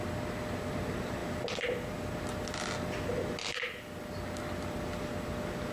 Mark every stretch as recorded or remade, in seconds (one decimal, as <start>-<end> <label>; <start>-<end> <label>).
0.0-5.7 recorded